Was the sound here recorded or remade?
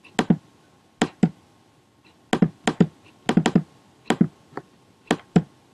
recorded